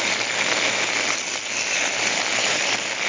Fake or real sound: real